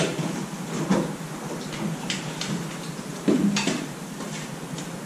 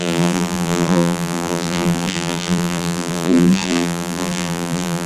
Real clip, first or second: first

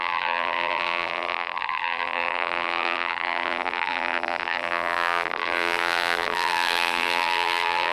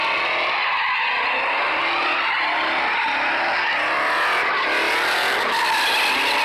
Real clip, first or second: second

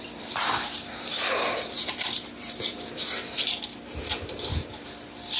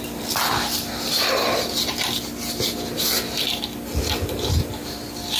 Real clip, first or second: second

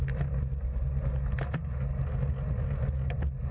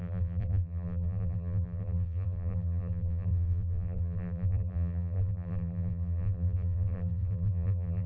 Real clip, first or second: first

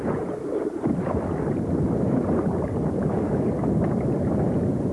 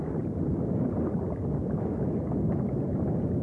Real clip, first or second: second